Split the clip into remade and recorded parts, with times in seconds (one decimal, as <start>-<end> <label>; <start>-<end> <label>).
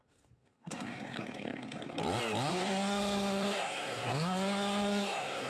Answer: 0.0-2.0 remade; 2.0-2.5 recorded; 2.5-5.5 remade